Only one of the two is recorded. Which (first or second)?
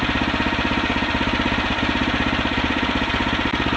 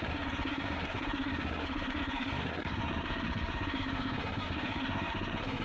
first